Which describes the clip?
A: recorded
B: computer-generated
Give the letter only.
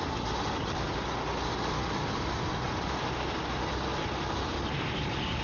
A